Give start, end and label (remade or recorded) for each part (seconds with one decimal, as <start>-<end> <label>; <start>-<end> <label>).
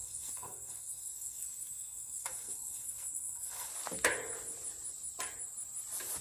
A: 0.0-3.7 remade; 3.7-6.2 recorded